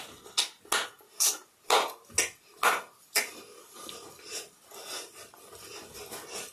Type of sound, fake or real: real